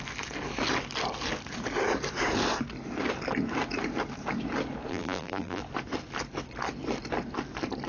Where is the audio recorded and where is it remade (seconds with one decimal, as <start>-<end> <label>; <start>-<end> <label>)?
0.0-4.9 recorded; 4.9-5.6 remade; 5.6-7.9 recorded